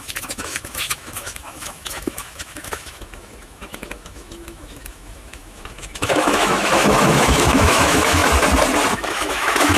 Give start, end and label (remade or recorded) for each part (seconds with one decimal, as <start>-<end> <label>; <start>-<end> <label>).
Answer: 0.0-8.2 remade; 8.2-8.9 recorded; 8.9-9.8 remade